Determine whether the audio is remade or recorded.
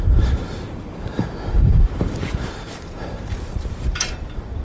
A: remade